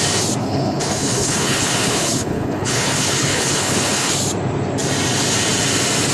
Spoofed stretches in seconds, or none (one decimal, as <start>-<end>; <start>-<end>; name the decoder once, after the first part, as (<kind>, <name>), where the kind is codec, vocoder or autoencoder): 0.4-4.1 (codec, HILCodec)